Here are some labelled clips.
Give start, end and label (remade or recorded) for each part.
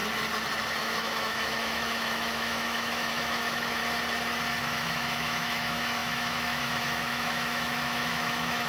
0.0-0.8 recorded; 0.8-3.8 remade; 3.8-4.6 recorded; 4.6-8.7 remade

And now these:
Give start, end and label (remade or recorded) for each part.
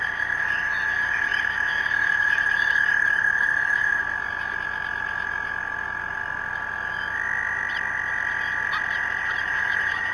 0.0-6.2 remade; 6.2-9.4 recorded; 9.4-10.1 remade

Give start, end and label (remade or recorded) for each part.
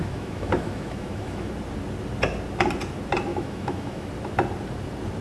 0.0-1.5 remade; 1.5-3.3 recorded; 3.3-4.1 remade; 4.1-5.2 recorded